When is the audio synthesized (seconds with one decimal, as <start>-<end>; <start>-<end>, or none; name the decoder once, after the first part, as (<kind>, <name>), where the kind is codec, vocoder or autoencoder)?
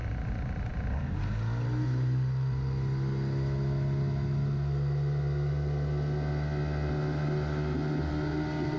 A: none